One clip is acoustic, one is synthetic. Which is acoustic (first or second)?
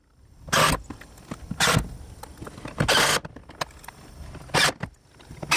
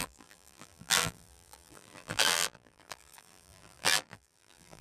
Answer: first